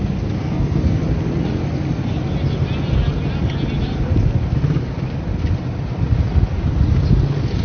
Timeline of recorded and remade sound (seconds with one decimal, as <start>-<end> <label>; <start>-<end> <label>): 0.0-0.4 recorded; 0.4-1.0 remade; 1.0-7.6 recorded